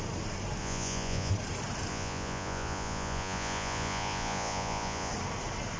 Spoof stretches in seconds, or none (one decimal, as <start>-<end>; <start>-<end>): 0.6-1.3; 1.9-5.1